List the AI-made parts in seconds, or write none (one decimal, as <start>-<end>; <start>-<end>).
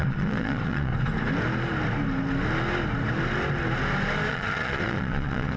0.0-0.9; 4.3-5.6